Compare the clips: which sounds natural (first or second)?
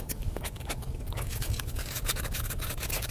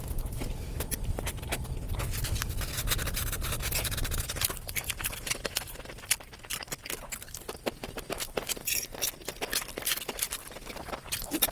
second